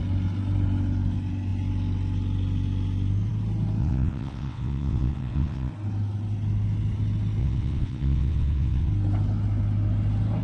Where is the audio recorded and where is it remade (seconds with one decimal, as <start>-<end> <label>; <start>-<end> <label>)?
0.0-3.8 recorded; 3.8-5.7 remade; 5.7-7.4 recorded; 7.4-8.9 remade; 8.9-10.4 recorded